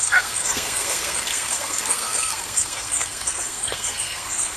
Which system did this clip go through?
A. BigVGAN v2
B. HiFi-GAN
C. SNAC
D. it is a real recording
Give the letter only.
C